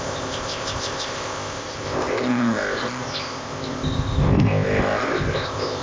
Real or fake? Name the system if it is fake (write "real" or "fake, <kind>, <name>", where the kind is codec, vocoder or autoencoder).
fake, codec, ZipCodec